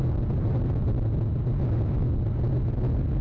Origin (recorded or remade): recorded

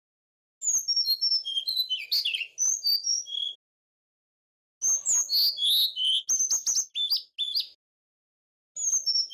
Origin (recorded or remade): recorded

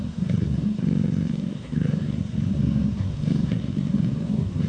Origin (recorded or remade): remade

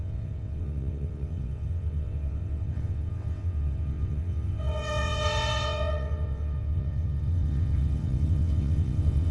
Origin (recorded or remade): remade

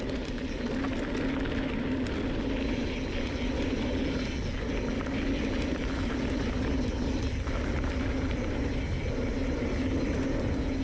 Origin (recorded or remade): recorded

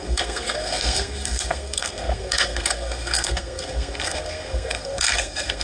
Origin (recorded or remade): remade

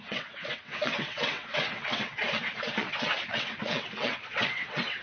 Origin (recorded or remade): remade